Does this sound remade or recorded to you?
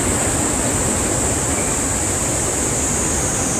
recorded